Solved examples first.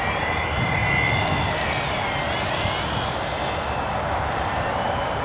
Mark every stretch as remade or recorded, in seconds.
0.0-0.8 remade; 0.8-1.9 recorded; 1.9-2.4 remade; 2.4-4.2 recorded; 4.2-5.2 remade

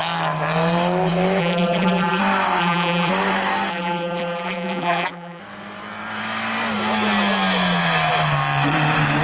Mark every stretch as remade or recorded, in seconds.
0.0-1.4 recorded; 1.4-2.2 remade; 2.2-2.6 recorded; 2.6-3.1 remade; 3.1-3.7 recorded; 3.7-5.4 remade; 5.4-9.2 recorded